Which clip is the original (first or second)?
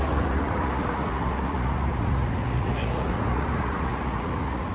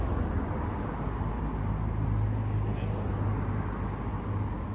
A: second